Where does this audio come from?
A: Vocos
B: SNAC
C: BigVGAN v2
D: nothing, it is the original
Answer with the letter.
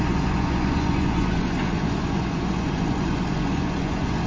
A